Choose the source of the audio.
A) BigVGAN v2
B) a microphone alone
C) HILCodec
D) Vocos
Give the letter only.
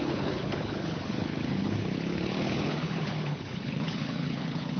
C